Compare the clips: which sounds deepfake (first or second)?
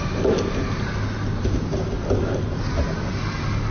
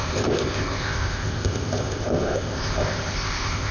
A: second